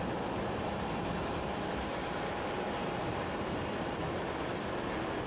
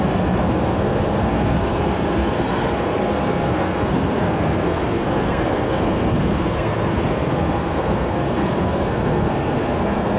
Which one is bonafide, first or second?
first